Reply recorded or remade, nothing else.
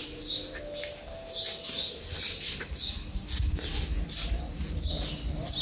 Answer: recorded